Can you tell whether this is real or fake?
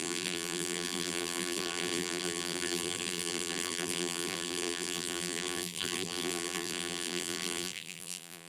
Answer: fake